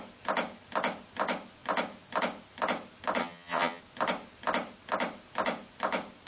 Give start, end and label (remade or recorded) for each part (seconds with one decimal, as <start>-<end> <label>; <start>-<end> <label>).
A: 0.0-3.2 recorded; 3.2-3.8 remade; 3.8-6.3 recorded